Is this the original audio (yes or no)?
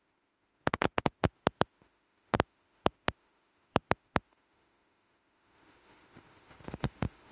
no